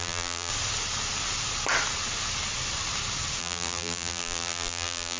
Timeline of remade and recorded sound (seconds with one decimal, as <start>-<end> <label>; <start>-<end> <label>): 0.0-0.5 remade; 0.5-3.4 recorded; 3.4-5.2 remade